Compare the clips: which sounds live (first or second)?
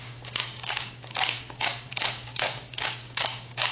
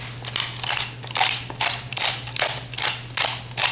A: second